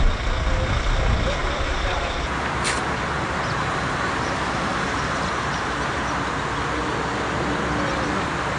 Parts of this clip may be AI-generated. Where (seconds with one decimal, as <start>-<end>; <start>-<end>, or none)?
1.4-6.0; 7.9-8.6